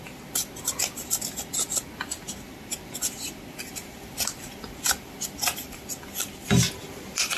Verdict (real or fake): real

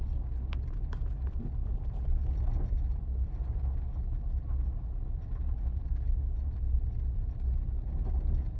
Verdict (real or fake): real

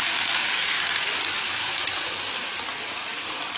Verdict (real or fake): real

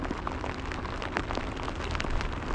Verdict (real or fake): real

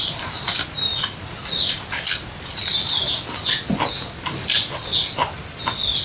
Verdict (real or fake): real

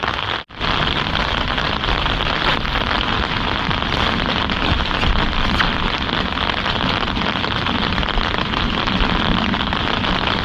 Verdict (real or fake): real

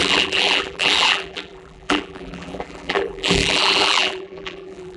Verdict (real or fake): fake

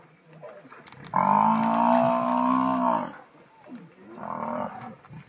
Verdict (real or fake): real